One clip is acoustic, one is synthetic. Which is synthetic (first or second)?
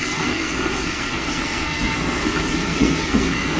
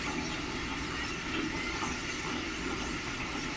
first